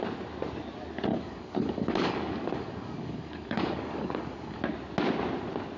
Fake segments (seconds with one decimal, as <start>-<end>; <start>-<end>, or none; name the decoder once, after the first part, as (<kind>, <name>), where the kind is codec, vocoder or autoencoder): 1.1-4.6 (codec, DAC)